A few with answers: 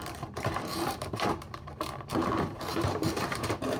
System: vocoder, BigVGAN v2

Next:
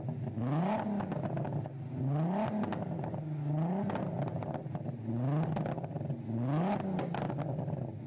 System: none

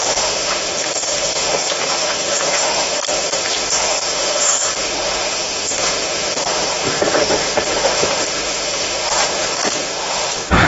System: autoencoder, DAC-VAE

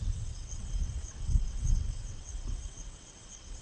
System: vocoder, WaveNeXt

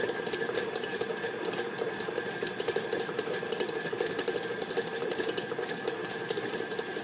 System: vocoder, BigVGAN v2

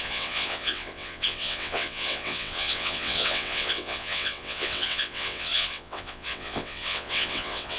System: vocoder, WaveNeXt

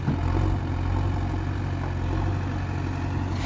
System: none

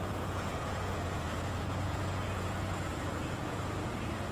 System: vocoder, Vocos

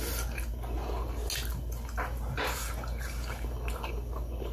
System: none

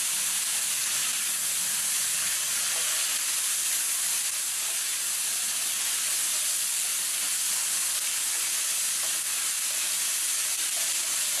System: none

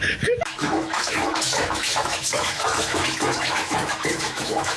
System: autoencoder, DAC-VAE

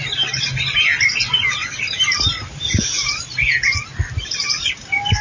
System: none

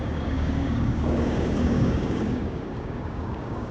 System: codec, DAC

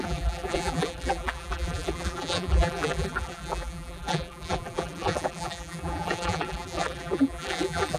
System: vocoder, BigVGAN v2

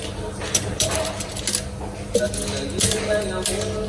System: none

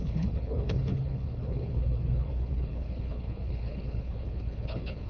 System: codec, HILCodec